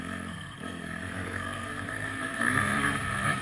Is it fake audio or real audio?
fake